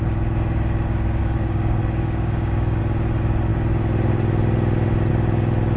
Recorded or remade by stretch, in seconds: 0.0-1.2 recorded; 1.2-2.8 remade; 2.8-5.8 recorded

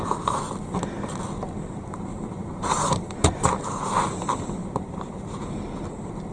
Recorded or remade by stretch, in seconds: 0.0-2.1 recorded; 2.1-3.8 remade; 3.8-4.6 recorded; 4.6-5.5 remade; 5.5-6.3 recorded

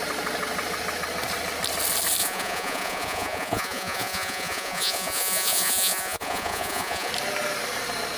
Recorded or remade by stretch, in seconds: 0.0-2.2 recorded; 2.2-7.1 remade; 7.1-8.2 recorded